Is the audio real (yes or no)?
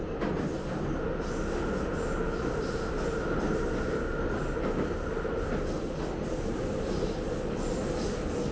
yes